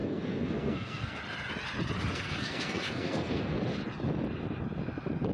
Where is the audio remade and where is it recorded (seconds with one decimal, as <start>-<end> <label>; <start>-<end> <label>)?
0.0-1.2 remade; 1.2-2.1 recorded; 2.1-3.6 remade; 3.6-5.3 recorded